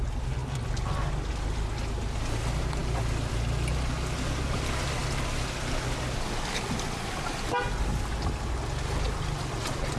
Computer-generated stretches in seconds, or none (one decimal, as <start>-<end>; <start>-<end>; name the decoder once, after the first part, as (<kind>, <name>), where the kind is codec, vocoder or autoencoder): none